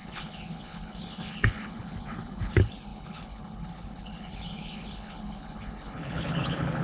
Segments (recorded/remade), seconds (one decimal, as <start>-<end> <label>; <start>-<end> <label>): 0.0-6.8 remade